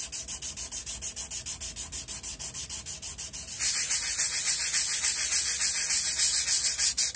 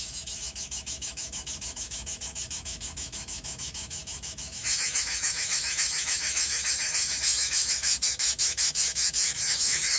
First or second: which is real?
first